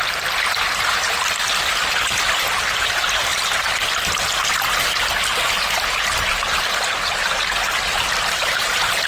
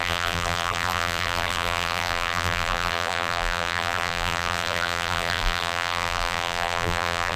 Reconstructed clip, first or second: second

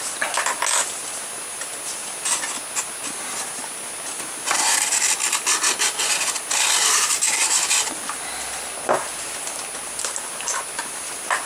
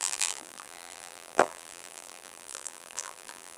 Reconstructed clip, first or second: second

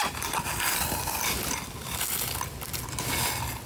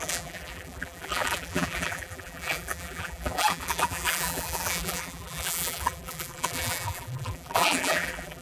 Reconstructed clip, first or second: second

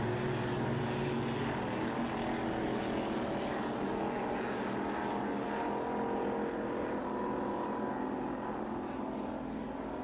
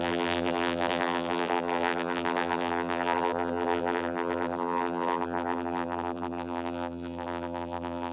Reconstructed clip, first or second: second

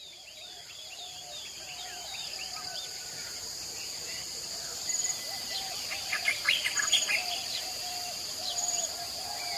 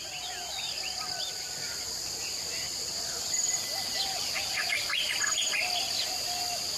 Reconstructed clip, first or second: first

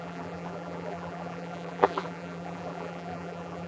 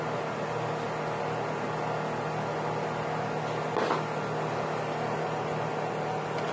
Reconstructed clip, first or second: first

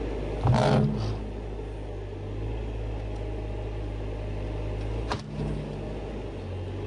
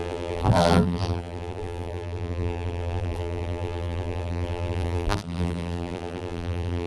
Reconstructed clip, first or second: second